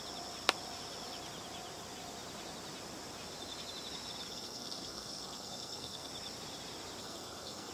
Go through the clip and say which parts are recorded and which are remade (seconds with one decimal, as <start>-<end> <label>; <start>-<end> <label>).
0.0-4.3 recorded; 4.3-6.1 remade; 6.1-7.0 recorded; 7.0-7.7 remade